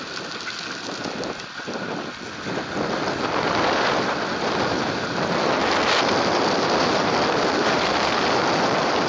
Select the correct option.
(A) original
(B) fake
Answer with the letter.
A